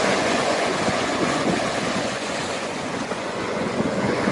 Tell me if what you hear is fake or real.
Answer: fake